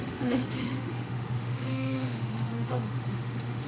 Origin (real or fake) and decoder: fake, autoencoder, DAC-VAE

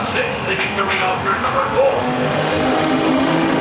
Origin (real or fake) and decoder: fake, autoencoder, DAC-VAE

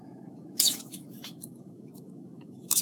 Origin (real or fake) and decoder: fake, autoencoder, DAC-VAE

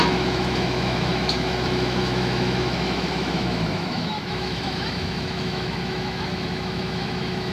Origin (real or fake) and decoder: fake, autoencoder, DAC-VAE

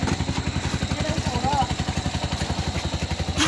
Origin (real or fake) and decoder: real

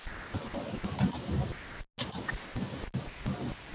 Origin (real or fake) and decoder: real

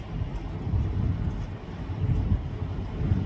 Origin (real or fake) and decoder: real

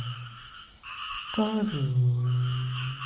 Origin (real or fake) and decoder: fake, autoencoder, DAC-VAE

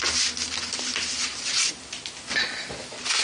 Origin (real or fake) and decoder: real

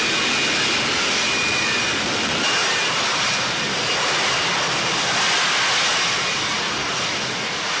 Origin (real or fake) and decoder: real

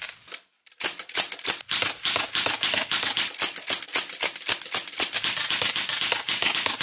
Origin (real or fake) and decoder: real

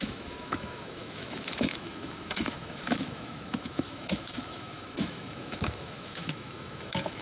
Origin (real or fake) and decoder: fake, autoencoder, DAC-VAE